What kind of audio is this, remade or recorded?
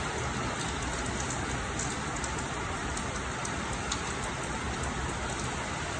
recorded